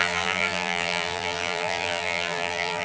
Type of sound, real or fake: fake